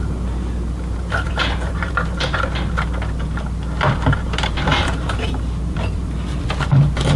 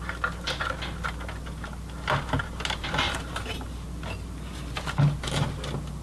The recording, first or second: second